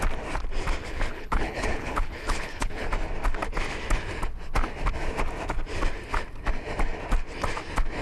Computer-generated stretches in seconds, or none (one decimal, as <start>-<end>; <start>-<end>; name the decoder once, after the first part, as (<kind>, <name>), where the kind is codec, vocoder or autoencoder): 0.8-2.9 (codec, HILCodec)